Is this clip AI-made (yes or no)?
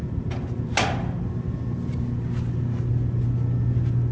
no